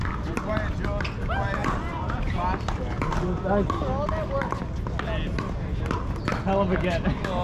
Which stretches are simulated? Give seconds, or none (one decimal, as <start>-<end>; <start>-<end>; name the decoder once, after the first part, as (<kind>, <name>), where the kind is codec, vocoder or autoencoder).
none